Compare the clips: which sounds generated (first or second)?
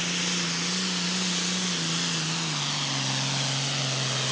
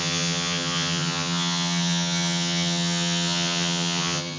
second